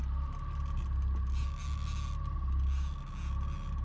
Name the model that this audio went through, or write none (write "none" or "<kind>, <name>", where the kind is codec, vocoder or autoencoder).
none